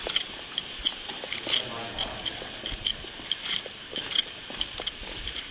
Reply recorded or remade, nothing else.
recorded